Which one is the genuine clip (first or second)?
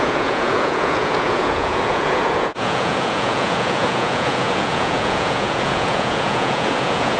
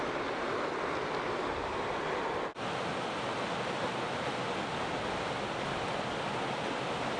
second